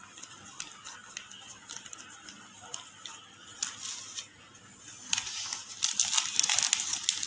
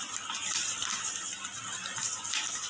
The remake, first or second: second